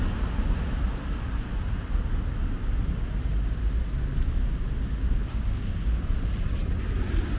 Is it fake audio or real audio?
real